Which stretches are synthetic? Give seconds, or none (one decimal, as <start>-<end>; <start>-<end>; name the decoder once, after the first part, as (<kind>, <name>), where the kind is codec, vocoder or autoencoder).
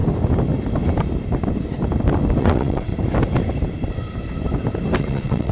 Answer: 2.4-2.9 (vocoder, WaveNeXt); 5.0-5.5